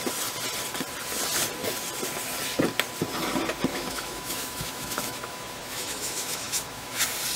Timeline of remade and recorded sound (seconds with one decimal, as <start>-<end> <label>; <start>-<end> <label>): 0.0-3.7 recorded; 3.7-7.0 remade; 7.0-7.4 recorded